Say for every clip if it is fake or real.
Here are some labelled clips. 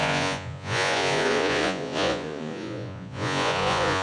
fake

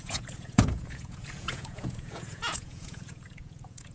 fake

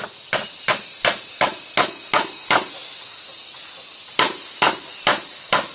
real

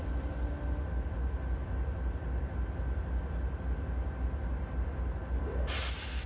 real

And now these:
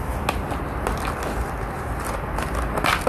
real